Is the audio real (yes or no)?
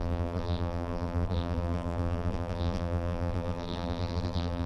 no